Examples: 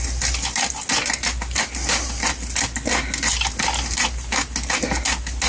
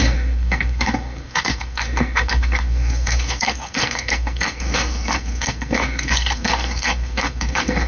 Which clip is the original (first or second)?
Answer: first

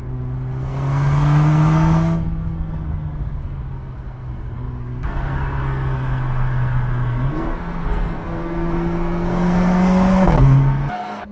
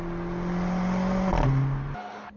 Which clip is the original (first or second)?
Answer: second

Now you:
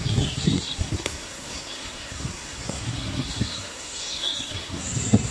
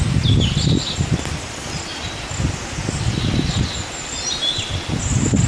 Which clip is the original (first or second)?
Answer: second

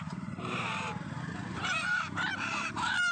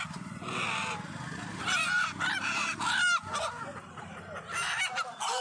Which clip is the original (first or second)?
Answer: second